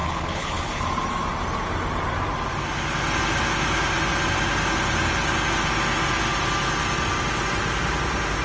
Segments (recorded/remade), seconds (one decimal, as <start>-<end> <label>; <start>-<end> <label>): 0.0-0.8 remade; 0.8-8.4 recorded

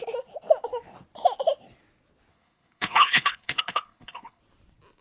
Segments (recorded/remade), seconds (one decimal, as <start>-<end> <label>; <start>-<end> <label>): 0.0-2.3 recorded; 2.3-4.4 remade; 4.4-5.0 recorded

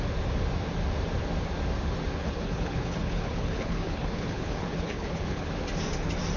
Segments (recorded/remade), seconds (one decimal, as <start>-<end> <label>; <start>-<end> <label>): 0.0-2.2 recorded; 2.2-5.5 remade; 5.5-6.4 recorded

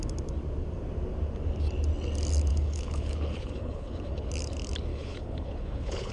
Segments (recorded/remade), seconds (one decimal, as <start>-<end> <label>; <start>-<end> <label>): 0.0-2.5 recorded; 2.5-4.3 remade; 4.3-4.9 recorded; 4.9-6.1 remade

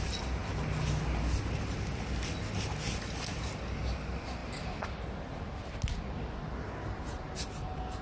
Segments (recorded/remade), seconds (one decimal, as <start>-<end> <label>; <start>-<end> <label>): 0.0-8.0 recorded

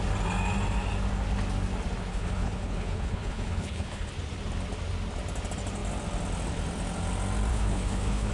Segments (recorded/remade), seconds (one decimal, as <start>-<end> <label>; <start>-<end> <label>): 0.0-2.1 recorded; 2.1-4.1 remade; 4.1-7.5 recorded; 7.5-8.3 remade

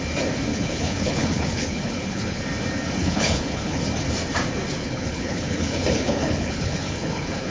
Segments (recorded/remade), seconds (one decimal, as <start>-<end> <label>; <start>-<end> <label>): 0.0-0.5 recorded; 0.5-2.4 remade; 2.4-3.0 recorded; 3.0-3.8 remade; 3.8-4.8 recorded; 4.8-7.5 remade